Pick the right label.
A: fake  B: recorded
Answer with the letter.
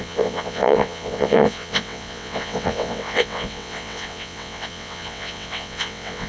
A